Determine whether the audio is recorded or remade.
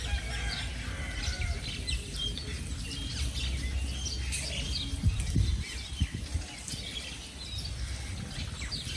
recorded